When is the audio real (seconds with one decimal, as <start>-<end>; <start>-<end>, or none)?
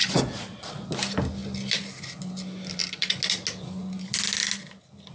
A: 0.9-5.1